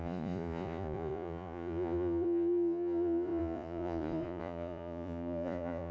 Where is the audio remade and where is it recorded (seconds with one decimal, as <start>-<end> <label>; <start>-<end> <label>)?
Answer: 0.0-5.9 remade